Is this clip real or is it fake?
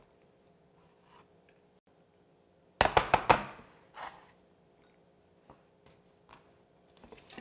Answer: real